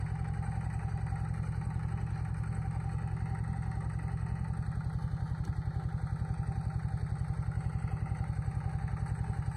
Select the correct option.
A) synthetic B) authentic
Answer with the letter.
B